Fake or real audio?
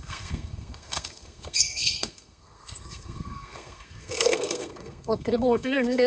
fake